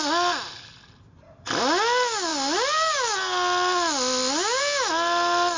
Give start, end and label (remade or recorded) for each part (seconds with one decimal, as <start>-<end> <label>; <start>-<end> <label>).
0.0-5.6 recorded